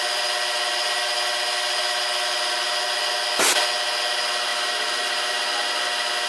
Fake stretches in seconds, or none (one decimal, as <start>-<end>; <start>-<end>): none